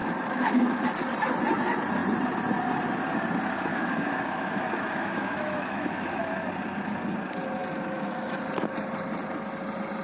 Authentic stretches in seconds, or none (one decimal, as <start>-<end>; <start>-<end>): 0.8-3.7; 6.2-7.6; 8.4-10.0